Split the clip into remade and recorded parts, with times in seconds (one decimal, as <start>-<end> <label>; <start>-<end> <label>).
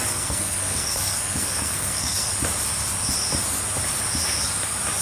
0.0-2.3 remade; 2.3-5.0 recorded